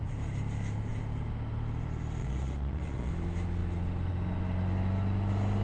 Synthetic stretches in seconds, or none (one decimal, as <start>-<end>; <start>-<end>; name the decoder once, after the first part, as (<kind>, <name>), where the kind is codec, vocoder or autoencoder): 2.2-3.1 (vocoder, Vocos)